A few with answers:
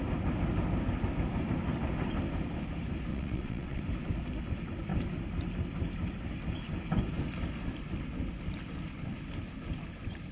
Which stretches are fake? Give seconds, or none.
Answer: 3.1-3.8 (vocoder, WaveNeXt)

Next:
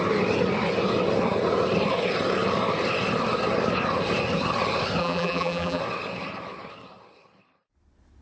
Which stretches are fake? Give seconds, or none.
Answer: 5.0-5.8 (vocoder, BigVGAN v2)

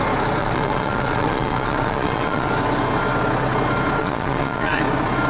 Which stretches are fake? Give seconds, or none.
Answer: 0.4-2.5 (vocoder, Vocos); 4.0-4.8

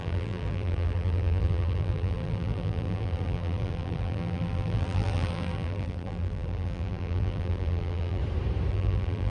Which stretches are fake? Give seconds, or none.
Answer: 0.0-8.2 (vocoder, BigVGAN v2); 8.7-9.3

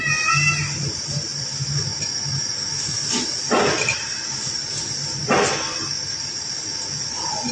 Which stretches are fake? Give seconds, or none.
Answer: none

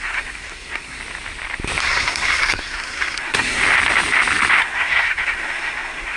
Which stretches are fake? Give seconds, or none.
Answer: 0.0-1.0 (codec, SNAC); 1.8-3.6; 4.6-6.2

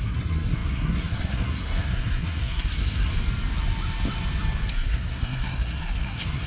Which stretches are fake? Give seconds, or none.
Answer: 0.0-3.1 (codec, SNAC); 4.7-6.5

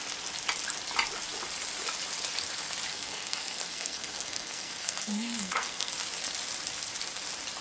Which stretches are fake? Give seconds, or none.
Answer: 2.9-5.9 (codec, SNAC)